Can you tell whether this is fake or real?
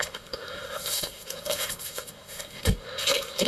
fake